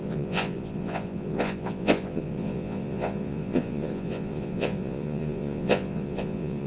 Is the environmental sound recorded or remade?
remade